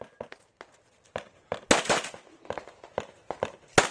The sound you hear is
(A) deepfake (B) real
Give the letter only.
B